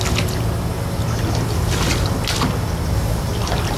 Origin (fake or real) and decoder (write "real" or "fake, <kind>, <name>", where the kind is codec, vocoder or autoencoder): real